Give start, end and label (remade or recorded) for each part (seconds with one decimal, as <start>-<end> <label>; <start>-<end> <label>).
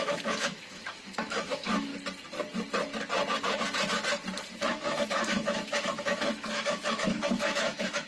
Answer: 0.0-1.9 remade; 1.9-4.5 recorded; 4.5-8.1 remade